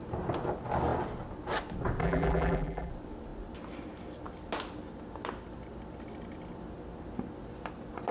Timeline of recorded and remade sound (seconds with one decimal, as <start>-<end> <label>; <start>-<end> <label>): 0.0-2.0 recorded; 2.0-2.9 remade; 2.9-8.1 recorded